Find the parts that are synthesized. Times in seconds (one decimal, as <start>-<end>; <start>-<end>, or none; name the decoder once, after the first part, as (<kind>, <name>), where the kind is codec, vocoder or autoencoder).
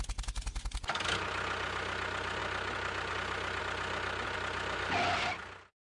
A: none